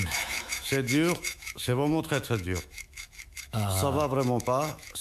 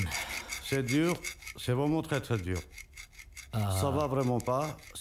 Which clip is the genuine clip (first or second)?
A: second